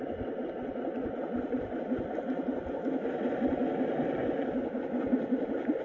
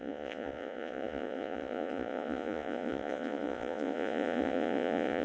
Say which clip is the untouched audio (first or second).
first